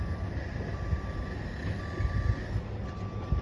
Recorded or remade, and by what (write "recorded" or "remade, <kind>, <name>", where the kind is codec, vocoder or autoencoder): recorded